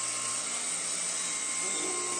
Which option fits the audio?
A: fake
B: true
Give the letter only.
B